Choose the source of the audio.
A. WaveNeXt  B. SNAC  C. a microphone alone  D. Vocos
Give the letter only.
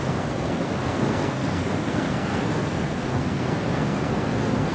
B